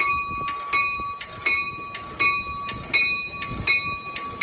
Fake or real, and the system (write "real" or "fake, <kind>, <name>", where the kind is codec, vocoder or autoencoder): real